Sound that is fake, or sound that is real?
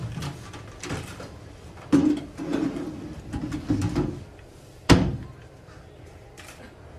fake